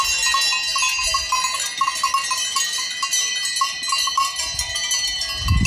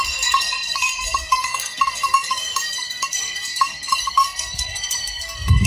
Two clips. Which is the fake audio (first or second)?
second